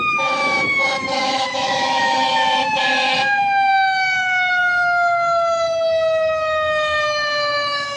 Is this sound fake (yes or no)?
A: yes